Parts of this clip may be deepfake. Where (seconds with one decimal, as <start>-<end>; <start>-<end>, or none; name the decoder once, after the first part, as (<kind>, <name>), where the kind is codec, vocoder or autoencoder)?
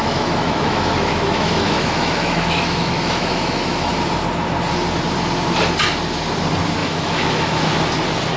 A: 0.0-3.9 (autoencoder, DAC-VAE); 6.8-7.7